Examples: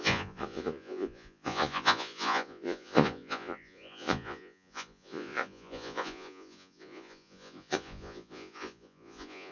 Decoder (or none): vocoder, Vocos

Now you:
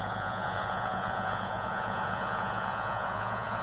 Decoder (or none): vocoder, Vocos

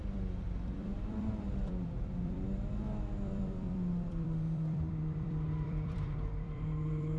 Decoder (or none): vocoder, BigVGAN v2